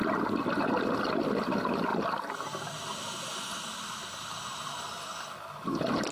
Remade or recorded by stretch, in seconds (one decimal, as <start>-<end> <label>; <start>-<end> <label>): 0.0-6.1 recorded